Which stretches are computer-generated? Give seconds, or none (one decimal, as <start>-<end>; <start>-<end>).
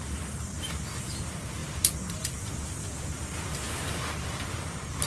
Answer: none